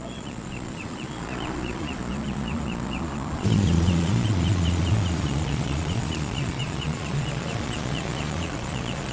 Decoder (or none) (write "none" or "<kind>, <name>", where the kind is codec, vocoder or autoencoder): vocoder, Vocos